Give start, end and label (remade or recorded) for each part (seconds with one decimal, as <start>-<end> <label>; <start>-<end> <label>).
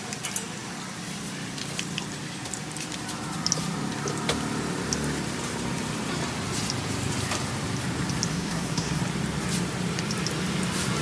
0.0-8.3 recorded; 8.3-9.0 remade; 9.0-11.0 recorded